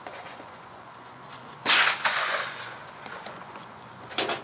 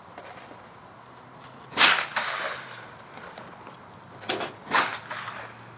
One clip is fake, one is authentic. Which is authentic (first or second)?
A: second